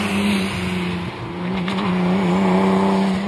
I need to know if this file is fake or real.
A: real